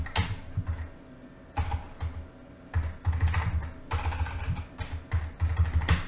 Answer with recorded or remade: recorded